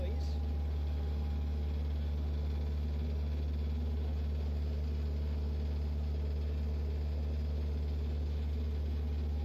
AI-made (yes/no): no